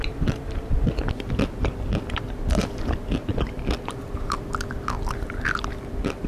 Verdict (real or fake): real